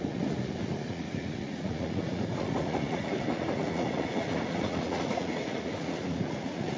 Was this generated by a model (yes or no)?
yes